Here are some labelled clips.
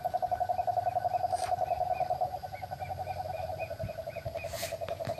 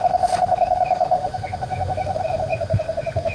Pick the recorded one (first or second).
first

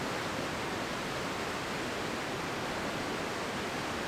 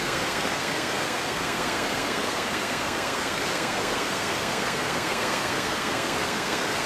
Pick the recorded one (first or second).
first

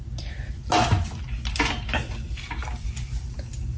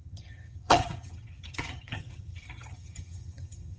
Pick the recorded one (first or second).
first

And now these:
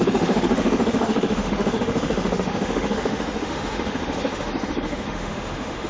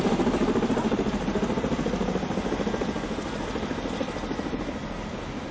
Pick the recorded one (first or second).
second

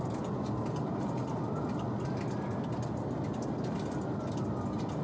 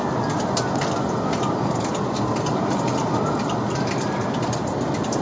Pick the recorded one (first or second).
first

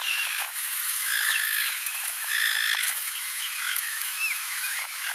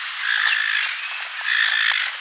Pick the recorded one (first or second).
second